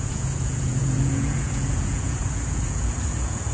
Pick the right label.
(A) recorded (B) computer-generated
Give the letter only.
B